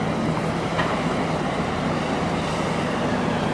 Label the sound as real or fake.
fake